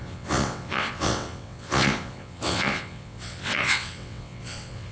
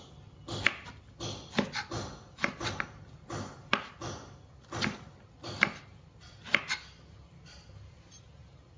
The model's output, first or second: first